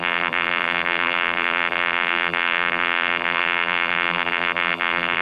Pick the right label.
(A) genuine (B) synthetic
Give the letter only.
B